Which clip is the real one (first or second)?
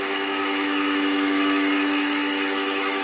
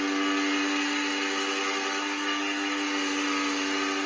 second